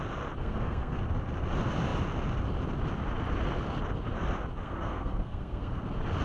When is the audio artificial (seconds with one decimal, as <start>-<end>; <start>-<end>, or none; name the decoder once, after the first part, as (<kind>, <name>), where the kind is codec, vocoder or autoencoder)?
0.4-1.0 (codec, SNAC); 4.6-5.8